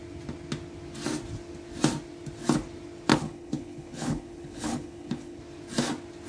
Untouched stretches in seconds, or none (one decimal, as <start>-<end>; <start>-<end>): 0.0-3.1; 5.4-6.3

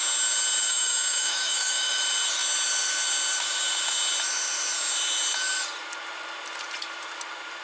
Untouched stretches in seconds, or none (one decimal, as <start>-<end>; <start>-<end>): 0.0-0.7; 2.0-7.6

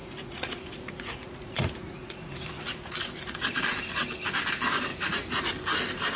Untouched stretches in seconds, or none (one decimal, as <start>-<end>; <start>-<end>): 3.6-4.9; 5.5-6.2

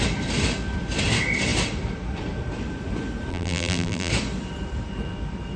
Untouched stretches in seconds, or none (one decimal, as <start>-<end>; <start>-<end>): 0.0-3.3; 4.1-5.6